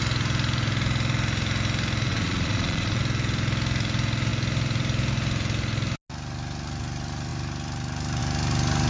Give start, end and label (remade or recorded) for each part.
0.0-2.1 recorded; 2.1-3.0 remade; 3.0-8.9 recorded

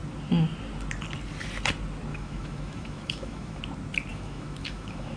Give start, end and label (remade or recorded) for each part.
0.0-2.1 recorded; 2.1-3.6 remade; 3.6-4.1 recorded; 4.1-5.2 remade

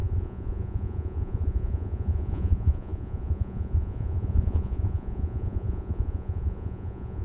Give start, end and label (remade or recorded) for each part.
0.0-7.2 remade

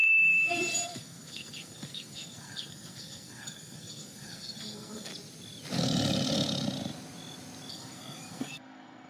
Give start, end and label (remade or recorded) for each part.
0.0-5.1 remade; 5.1-7.7 recorded; 7.7-9.1 remade

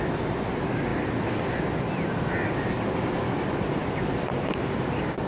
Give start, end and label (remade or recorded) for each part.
0.0-5.3 recorded